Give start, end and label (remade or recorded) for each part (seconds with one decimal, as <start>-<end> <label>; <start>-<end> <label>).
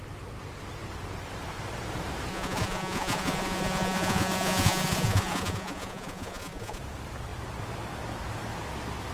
0.0-2.3 recorded; 2.3-6.8 remade; 6.8-9.1 recorded